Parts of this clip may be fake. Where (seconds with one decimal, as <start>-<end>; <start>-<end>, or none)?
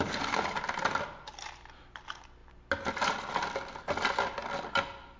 none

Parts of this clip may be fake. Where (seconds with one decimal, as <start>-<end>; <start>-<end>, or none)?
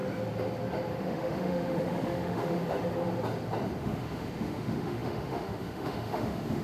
1.0-2.6; 3.8-6.6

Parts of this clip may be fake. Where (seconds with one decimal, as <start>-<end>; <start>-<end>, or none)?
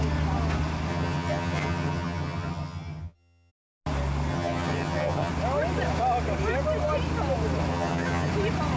0.9-3.5; 4.3-5.3; 7.7-8.3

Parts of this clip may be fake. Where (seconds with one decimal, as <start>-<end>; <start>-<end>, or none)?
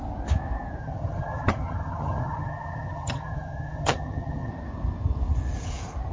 0.8-4.5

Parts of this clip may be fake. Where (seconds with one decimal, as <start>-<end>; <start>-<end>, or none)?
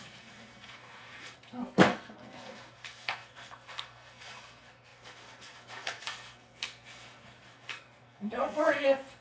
0.0-9.2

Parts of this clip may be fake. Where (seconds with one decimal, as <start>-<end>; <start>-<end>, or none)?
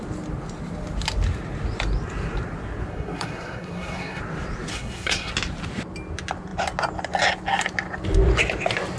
2.9-4.2; 4.7-5.3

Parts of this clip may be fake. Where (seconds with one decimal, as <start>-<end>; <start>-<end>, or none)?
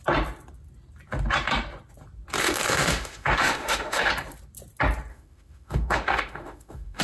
2.4-4.1; 5.1-7.0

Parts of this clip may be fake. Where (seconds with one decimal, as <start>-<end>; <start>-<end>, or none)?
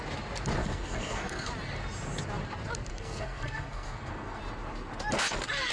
0.6-1.5; 2.9-4.4